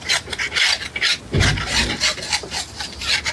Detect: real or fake real